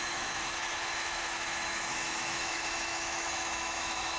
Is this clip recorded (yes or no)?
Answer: no